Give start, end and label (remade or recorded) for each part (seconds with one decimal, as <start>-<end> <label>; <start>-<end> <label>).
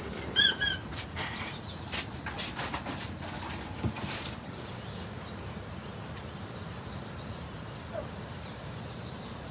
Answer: 0.0-0.8 recorded; 0.8-1.8 remade; 1.8-9.5 recorded